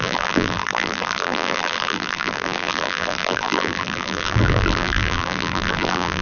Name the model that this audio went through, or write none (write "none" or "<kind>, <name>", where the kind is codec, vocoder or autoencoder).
vocoder, BigVGAN v2